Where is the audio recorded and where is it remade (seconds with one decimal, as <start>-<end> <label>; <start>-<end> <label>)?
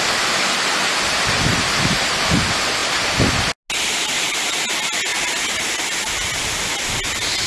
0.0-7.5 recorded